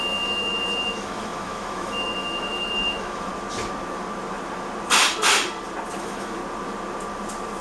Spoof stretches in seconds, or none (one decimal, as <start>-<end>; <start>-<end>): 0.0-3.3; 6.0-6.4